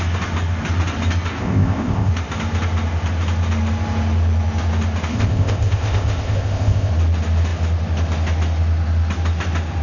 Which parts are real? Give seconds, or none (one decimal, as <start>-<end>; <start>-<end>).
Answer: 0.0-1.3; 2.1-5.1; 6.9-9.8

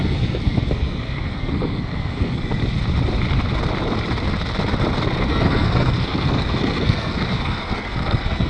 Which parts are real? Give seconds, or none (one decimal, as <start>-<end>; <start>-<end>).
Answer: 2.6-5.3